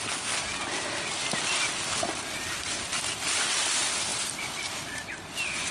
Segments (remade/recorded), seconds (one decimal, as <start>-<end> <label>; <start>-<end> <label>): 0.0-4.1 remade; 4.1-5.1 recorded; 5.1-5.7 remade